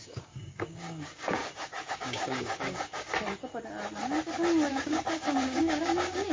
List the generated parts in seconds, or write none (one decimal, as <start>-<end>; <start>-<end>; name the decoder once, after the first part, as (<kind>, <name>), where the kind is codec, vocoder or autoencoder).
0.0-1.4 (codec, DAC); 1.9-3.1; 4.7-6.3